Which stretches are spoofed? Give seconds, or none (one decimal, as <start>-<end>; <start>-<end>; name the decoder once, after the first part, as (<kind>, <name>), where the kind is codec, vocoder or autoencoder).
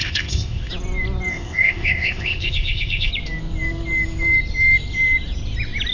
0.0-0.7 (codec, ZipCodec); 1.3-3.1